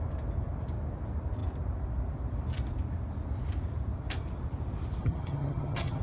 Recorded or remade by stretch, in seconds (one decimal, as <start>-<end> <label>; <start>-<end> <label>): 0.0-5.0 recorded; 5.0-6.0 remade